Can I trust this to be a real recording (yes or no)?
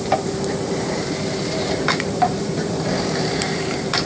no